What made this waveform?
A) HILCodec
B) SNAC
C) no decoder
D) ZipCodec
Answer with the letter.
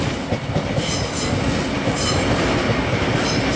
C